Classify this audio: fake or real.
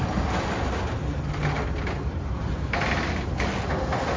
real